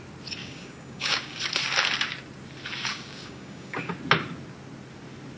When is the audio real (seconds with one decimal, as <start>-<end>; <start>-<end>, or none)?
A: 0.0-0.4; 1.4-2.9; 3.9-5.4